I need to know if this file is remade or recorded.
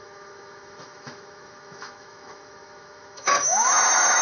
remade